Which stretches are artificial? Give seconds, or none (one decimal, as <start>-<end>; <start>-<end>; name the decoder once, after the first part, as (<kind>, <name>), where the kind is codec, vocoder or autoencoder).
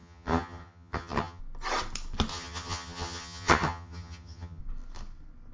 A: 0.0-1.4 (vocoder, HiFi-GAN); 2.3-4.6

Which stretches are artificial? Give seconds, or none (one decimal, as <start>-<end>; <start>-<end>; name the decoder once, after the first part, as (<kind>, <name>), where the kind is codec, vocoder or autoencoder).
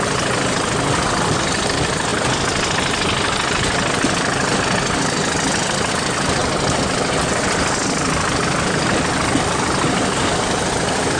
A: none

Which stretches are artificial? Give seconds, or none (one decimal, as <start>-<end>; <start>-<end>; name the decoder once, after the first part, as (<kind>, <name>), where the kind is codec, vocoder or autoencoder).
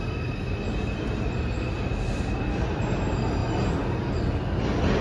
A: none